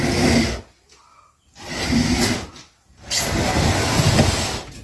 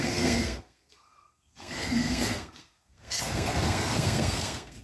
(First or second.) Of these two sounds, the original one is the first